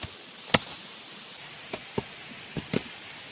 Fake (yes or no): no